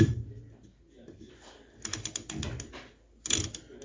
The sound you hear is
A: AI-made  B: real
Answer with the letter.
B